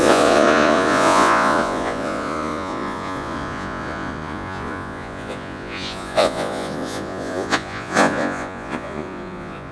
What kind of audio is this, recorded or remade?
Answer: remade